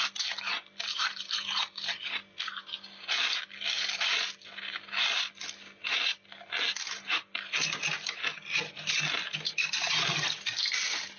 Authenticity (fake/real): real